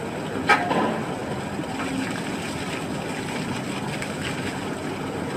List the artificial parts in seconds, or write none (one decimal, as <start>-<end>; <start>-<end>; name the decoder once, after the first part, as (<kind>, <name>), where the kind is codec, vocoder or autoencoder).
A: none